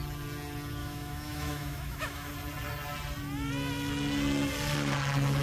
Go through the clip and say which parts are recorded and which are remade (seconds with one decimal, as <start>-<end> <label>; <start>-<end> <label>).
0.0-0.8 recorded; 0.8-2.3 remade; 2.3-5.4 recorded